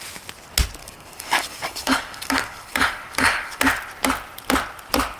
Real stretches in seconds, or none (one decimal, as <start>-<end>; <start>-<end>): 0.0-0.8; 3.6-5.2